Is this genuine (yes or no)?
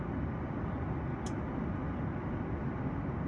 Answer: yes